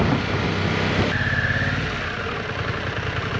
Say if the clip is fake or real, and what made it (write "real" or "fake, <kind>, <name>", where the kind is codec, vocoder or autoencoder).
real